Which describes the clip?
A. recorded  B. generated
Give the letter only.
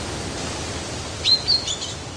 A